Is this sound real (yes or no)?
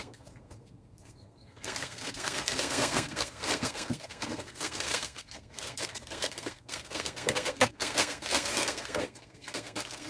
no